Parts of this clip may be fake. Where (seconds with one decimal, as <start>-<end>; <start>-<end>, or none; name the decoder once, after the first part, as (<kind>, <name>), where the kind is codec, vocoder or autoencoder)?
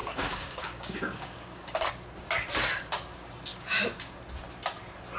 0.0-1.9 (codec, DAC); 3.5-4.2